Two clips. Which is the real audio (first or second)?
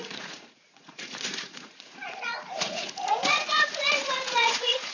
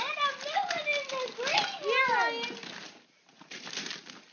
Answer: second